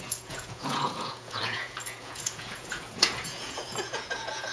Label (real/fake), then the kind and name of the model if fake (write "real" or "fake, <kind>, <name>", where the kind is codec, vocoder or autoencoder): fake, vocoder, Vocos